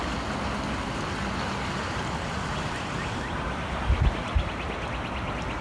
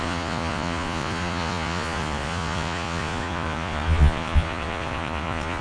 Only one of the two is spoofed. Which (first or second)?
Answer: second